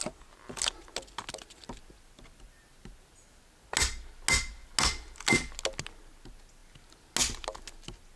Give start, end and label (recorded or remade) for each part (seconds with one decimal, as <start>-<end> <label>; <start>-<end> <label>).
0.0-8.2 recorded